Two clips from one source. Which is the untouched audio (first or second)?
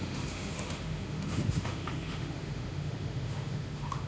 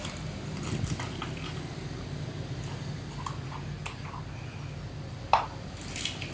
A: second